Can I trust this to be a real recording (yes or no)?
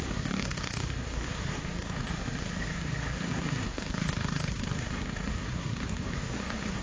no